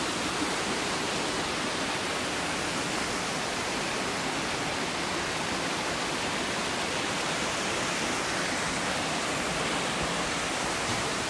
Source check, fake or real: real